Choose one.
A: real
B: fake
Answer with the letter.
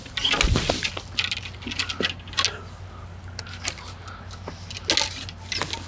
A